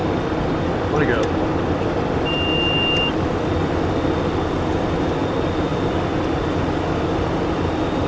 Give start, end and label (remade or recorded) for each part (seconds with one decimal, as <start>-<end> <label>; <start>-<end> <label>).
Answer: 0.0-8.1 recorded